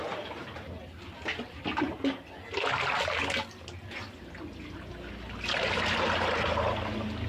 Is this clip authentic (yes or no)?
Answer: yes